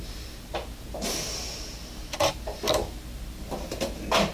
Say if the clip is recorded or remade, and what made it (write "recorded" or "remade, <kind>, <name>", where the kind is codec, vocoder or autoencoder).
recorded